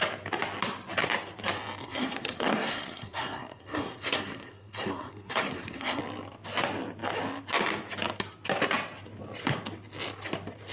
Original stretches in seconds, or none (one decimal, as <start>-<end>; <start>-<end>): 0.0-1.8; 6.0-10.7